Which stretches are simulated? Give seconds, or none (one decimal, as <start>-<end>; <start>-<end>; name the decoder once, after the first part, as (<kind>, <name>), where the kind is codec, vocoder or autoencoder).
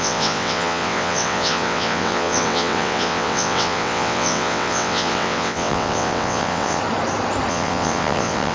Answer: 0.0-6.8 (vocoder, WaveNeXt); 7.5-8.5